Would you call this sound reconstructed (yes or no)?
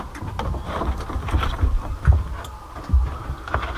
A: no